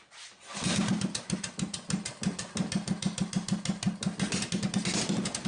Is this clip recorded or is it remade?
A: recorded